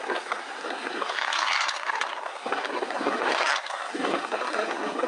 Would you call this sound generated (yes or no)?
yes